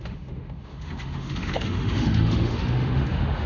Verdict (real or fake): fake